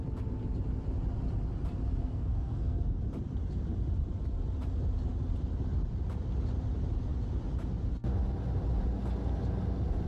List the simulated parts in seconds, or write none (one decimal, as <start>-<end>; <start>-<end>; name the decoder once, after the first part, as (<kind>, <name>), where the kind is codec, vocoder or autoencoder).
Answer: 2.0-3.0 (codec, SNAC)